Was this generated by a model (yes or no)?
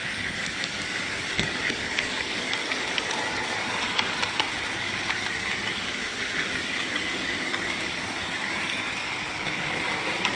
yes